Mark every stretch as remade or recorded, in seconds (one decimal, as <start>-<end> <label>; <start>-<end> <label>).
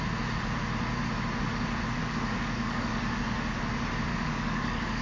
0.0-2.0 recorded; 2.0-3.0 remade; 3.0-4.1 recorded; 4.1-5.0 remade